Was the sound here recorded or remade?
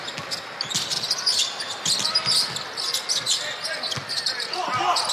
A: recorded